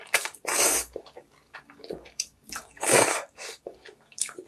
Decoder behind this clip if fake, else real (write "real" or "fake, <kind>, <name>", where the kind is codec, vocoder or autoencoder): fake, codec, DAC